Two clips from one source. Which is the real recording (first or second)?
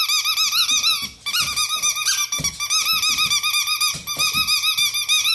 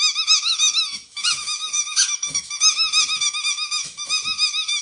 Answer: first